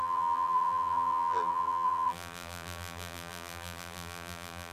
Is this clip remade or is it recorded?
remade